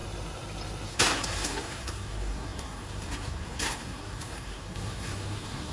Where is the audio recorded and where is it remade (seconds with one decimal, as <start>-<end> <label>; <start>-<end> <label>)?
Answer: 0.0-0.9 recorded; 0.9-5.7 remade